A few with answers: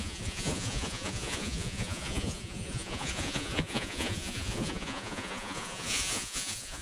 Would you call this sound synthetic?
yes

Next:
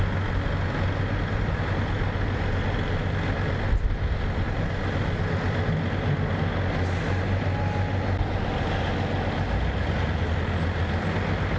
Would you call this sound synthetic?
no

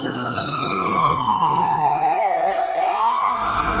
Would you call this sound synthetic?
yes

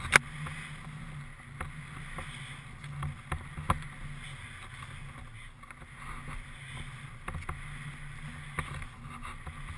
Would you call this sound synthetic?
no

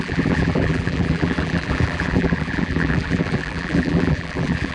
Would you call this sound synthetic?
yes